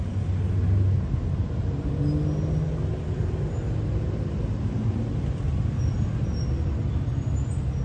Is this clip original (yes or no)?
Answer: yes